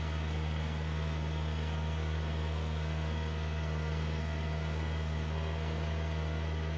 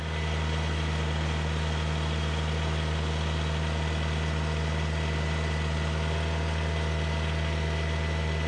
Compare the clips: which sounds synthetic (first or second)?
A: first